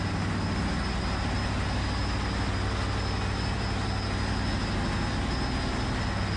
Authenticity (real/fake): real